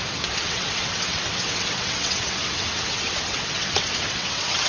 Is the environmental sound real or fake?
fake